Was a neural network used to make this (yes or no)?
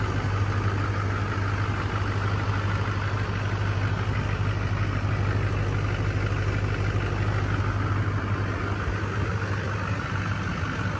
no